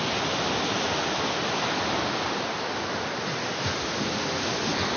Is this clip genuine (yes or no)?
yes